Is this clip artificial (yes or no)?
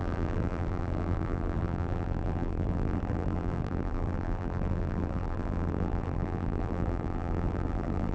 yes